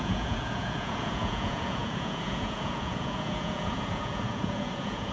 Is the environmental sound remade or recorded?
remade